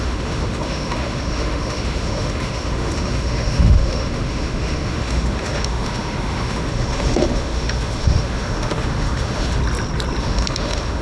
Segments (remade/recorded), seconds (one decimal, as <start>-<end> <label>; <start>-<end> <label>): 0.0-9.6 remade; 9.6-10.2 recorded; 10.2-11.0 remade

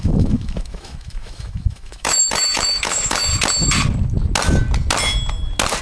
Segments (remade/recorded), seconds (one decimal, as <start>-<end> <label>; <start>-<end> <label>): 0.0-3.3 remade; 3.3-5.8 recorded